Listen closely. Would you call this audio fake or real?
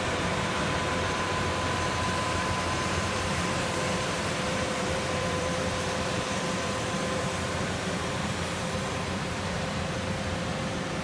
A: fake